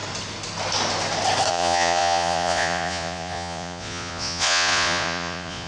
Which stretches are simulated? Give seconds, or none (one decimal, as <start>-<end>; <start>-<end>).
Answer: 1.5-5.7